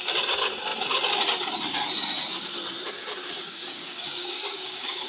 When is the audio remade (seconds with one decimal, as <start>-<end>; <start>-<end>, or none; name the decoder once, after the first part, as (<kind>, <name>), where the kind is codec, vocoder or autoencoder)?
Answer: 3.2-5.1 (codec, DAC)